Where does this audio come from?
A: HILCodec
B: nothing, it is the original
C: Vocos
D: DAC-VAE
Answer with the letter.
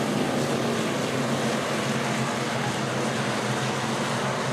B